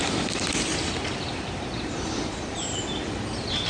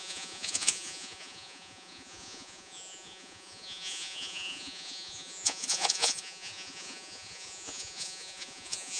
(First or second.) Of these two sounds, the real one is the first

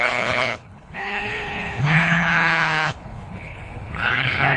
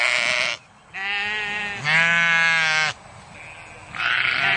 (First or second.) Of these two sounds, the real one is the second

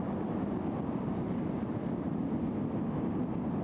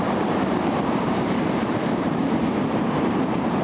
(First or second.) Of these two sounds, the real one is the first